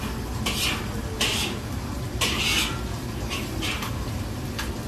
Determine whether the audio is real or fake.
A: real